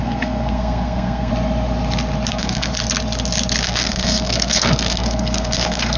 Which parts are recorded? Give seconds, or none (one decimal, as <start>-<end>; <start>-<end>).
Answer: 1.3-2.3; 2.7-3.6